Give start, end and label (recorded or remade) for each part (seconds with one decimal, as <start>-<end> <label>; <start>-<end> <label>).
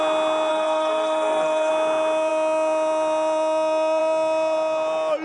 0.0-0.5 recorded; 0.5-1.7 remade; 1.7-5.2 recorded